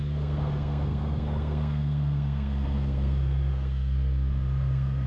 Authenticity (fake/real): fake